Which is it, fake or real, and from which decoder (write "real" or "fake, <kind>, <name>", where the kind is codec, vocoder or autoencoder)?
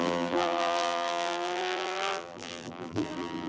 fake, vocoder, BigVGAN v2